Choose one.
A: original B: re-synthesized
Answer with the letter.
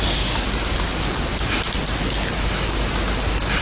A